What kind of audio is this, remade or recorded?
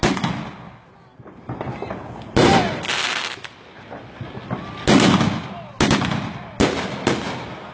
recorded